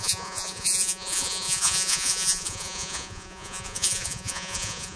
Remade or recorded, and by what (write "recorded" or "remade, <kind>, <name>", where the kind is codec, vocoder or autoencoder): remade, vocoder, Vocos